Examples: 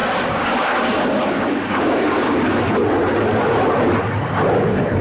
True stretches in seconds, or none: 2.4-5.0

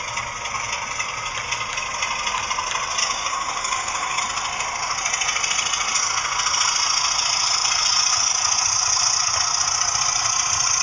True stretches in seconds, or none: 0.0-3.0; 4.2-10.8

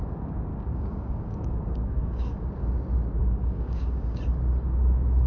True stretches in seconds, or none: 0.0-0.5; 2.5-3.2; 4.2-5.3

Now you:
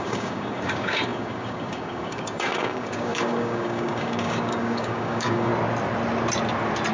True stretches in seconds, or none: 5.5-6.9

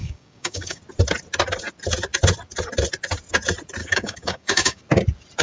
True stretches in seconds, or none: 0.8-3.8; 4.8-5.4

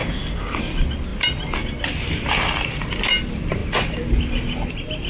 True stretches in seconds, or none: 0.6-5.1

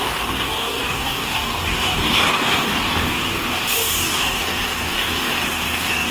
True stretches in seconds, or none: none